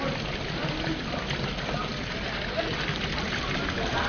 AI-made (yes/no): no